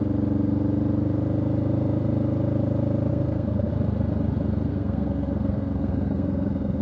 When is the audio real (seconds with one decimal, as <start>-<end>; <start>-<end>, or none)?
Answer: 0.0-3.1; 3.7-4.7